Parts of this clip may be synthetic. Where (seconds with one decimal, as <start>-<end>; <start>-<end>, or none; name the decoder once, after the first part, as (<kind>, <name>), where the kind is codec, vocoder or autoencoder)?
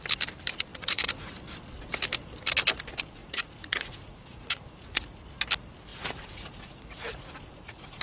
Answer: 0.7-1.3 (vocoder, Vocos); 3.2-5.2; 5.9-8.0